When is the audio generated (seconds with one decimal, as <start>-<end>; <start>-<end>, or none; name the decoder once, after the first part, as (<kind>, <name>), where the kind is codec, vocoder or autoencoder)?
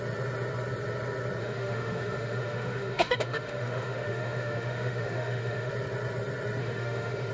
1.4-5.7 (autoencoder, DAC-VAE); 6.6-7.3